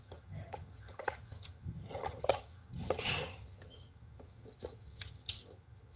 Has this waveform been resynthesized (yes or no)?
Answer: yes